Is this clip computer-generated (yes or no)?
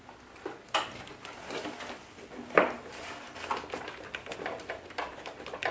no